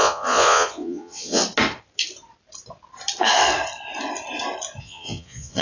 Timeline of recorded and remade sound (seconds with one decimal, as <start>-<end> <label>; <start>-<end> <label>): 0.0-1.4 remade; 1.4-4.8 recorded; 4.8-5.6 remade